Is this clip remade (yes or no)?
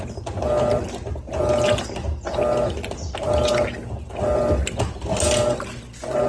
no